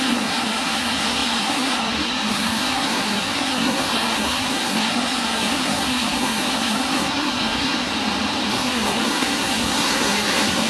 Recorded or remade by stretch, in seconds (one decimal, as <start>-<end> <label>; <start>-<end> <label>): 0.0-7.9 remade; 7.9-8.5 recorded; 8.5-10.7 remade

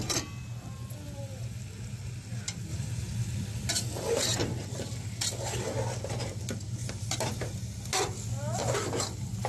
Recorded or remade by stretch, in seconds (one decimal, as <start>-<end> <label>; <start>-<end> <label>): 0.0-2.7 recorded; 2.7-3.7 remade; 3.7-6.8 recorded; 6.8-7.3 remade; 7.3-9.5 recorded

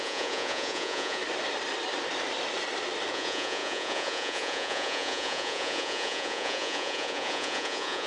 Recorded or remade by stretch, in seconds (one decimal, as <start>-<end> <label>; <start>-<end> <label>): 0.0-1.2 remade; 1.2-3.1 recorded; 3.1-8.1 remade

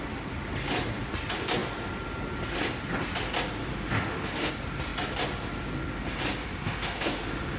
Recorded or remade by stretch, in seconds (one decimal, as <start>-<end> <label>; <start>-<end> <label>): 0.0-3.7 recorded; 3.7-4.5 remade; 4.5-6.4 recorded; 6.4-7.6 remade

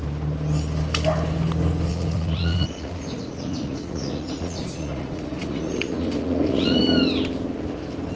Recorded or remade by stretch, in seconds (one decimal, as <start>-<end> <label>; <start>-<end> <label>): 0.0-1.9 recorded; 1.9-6.8 remade; 6.8-8.2 recorded

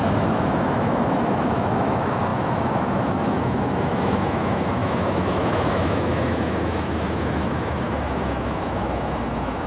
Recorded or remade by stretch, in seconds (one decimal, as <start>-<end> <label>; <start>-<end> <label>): 0.0-9.7 remade

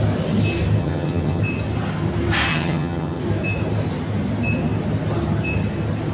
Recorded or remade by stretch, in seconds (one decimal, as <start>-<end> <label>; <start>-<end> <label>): 0.0-0.8 recorded; 0.8-1.4 remade; 1.4-2.5 recorded; 2.5-3.2 remade; 3.2-6.1 recorded

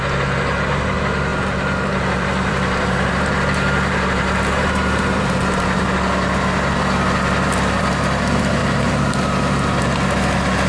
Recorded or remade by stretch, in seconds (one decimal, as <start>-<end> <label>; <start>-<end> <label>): 0.0-1.3 recorded; 1.3-5.8 remade; 5.8-8.6 recorded; 8.6-9.8 remade; 9.8-10.7 recorded